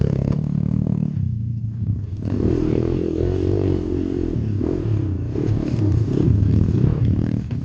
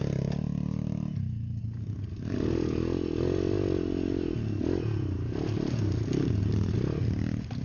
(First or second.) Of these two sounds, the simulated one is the first